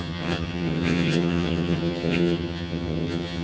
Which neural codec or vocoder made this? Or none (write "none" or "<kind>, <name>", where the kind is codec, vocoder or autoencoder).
vocoder, HiFi-GAN